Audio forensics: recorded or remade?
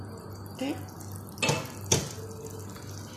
recorded